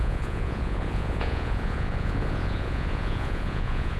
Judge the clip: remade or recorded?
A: remade